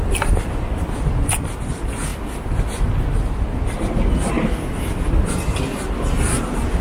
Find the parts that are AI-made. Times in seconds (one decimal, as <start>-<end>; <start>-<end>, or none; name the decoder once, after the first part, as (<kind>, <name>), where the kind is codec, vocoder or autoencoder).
none